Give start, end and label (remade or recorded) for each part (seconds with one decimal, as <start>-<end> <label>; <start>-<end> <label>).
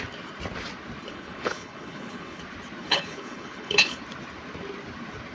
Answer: 0.0-1.0 recorded; 1.0-2.4 remade; 2.4-2.8 recorded; 2.8-4.0 remade; 4.0-5.3 recorded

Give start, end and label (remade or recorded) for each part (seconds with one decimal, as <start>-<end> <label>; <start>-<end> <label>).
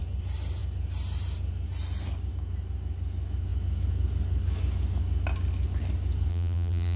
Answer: 0.0-6.3 recorded; 6.3-7.0 remade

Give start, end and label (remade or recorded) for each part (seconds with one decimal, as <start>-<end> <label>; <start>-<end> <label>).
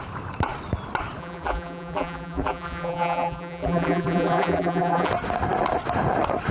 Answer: 0.0-1.2 recorded; 1.2-5.1 remade; 5.1-6.5 recorded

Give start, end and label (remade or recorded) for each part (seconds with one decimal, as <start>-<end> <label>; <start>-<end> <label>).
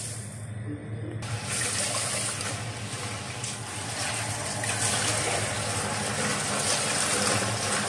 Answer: 0.0-7.9 recorded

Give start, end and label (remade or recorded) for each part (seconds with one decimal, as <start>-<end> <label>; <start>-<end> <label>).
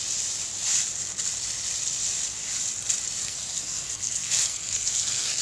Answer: 0.0-3.2 recorded; 3.2-5.4 remade